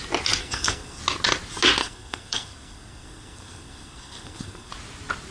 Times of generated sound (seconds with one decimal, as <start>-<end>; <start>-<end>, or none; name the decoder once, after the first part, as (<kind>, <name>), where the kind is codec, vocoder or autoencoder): 0.4-1.0 (codec, SNAC); 1.8-4.7